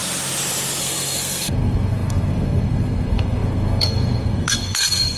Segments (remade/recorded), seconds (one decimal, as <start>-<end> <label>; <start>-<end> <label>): 0.0-0.8 recorded; 0.8-5.2 remade